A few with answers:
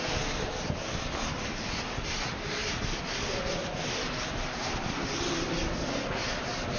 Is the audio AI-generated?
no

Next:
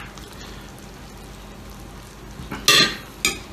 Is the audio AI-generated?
no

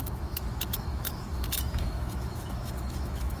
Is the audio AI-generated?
yes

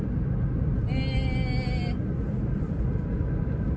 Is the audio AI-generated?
no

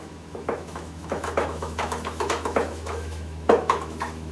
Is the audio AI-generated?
yes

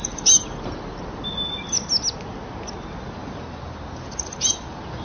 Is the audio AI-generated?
no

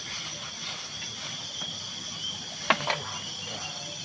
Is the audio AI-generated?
no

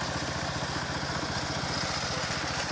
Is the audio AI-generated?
no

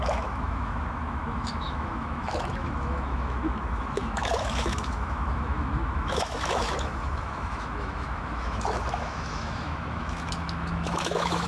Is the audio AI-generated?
yes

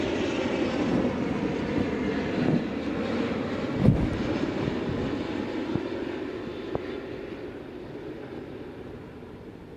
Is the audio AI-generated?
no